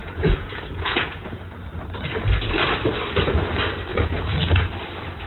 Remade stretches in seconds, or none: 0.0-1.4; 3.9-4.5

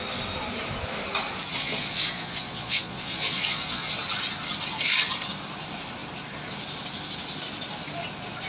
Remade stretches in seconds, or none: 1.5-3.9

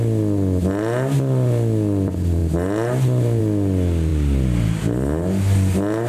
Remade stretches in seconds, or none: none

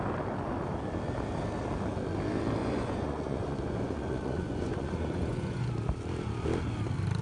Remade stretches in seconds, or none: 2.6-5.7

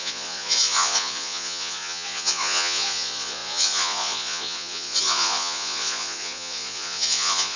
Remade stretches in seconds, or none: 0.0-7.6

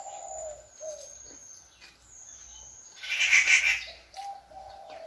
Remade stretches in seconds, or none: none

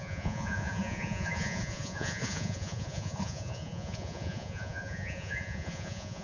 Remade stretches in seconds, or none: 0.0-6.2

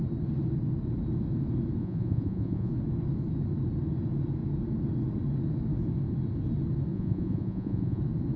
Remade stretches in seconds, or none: 1.8-2.7; 6.9-8.0